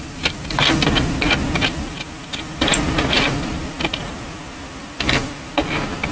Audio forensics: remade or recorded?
recorded